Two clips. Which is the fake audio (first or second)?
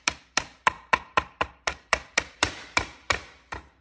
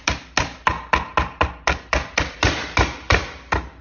first